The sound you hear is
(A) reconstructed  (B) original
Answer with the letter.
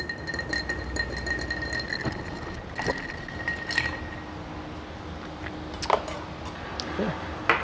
B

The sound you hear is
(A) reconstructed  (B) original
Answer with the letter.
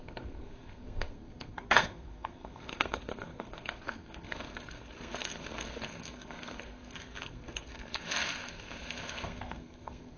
A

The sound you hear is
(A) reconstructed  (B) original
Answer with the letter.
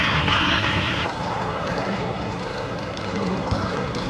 A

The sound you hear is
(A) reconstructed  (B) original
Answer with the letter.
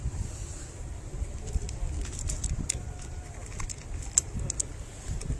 B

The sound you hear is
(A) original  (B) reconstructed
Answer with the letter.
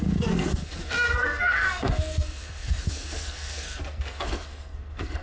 B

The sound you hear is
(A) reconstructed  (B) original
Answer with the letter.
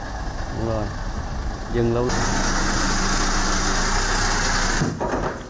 B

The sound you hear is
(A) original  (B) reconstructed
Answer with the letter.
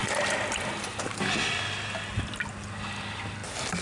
A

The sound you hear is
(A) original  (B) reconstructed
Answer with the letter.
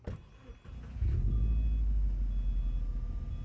A